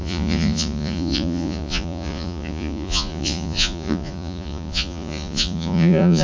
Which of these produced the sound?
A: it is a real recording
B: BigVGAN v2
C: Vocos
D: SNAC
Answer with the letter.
C